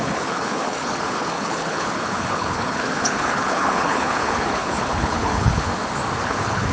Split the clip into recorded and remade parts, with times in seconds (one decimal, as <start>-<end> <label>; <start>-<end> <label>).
0.0-5.7 remade; 5.7-6.2 recorded; 6.2-6.7 remade